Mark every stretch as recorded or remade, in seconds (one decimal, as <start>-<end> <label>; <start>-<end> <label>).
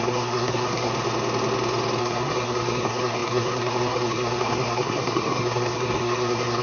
0.0-0.9 remade; 0.9-2.0 recorded; 2.0-6.6 remade